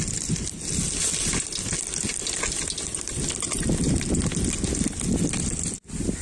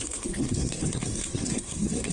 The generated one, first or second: second